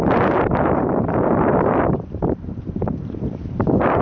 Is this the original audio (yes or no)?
no